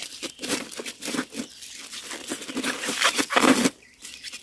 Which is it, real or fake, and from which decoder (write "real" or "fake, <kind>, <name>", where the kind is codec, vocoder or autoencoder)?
fake, vocoder, BigVGAN v2